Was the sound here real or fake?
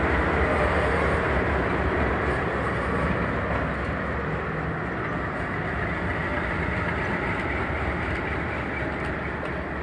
real